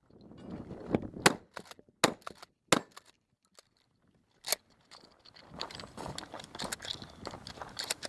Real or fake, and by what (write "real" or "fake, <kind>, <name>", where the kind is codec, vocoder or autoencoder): real